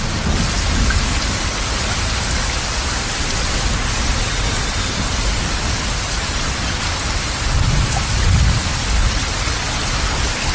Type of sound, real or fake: real